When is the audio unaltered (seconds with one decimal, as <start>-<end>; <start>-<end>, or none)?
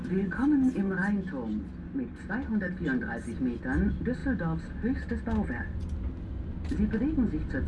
0.0-7.7